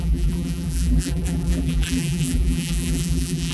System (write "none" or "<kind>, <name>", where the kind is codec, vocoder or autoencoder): vocoder, BigVGAN v2